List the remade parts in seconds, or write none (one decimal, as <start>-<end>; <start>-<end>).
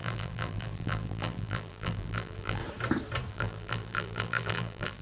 0.0-2.6; 3.3-5.0